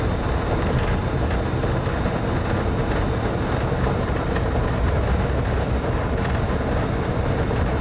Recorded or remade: recorded